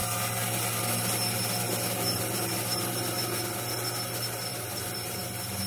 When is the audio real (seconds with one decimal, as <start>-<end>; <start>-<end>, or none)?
0.0-4.5; 5.1-5.7